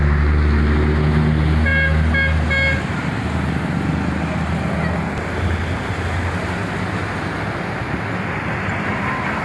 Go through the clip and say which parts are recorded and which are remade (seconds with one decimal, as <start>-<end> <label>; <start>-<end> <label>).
0.0-9.4 recorded